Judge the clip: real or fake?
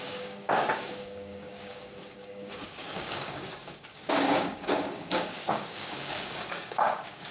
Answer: fake